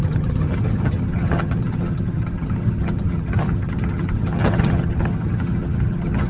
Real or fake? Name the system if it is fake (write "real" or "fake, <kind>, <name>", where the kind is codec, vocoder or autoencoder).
fake, vocoder, HiFi-GAN